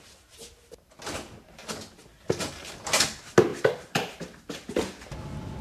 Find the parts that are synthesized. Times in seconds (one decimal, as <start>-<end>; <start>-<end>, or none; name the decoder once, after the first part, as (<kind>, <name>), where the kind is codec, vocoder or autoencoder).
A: 2.0-2.6 (vocoder, BigVGAN v2); 3.5-4.4